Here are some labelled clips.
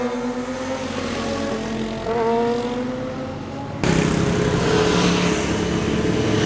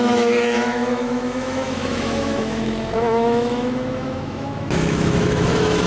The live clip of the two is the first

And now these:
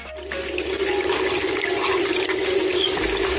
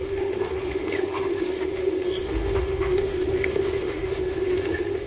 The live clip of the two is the first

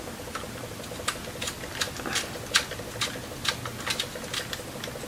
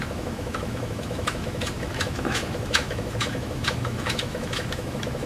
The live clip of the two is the first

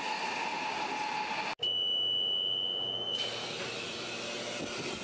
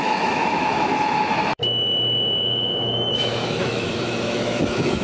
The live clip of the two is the first